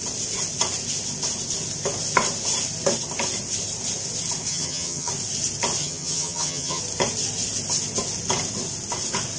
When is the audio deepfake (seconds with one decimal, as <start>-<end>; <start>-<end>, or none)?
4.5-5.1; 5.8-6.8